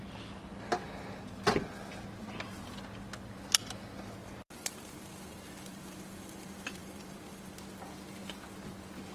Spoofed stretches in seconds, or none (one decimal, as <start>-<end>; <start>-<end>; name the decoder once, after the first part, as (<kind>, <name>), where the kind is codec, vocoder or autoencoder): 4.2-7.5 (vocoder, BigVGAN v2)